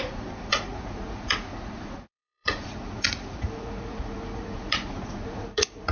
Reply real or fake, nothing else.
fake